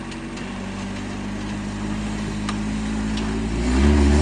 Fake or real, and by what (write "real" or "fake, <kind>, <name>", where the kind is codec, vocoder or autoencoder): real